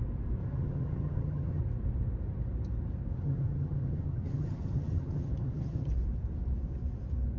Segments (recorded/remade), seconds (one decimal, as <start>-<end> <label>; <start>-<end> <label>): 0.0-0.4 recorded; 0.4-1.6 remade; 1.6-3.1 recorded; 3.1-5.9 remade; 5.9-7.4 recorded